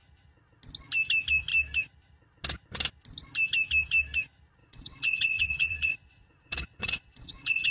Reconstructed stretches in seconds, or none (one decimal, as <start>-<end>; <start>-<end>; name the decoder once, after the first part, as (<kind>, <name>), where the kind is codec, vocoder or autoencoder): 4.6-7.7 (vocoder, WaveNeXt)